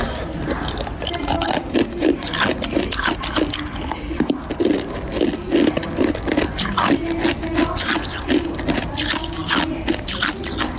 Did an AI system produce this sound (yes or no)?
no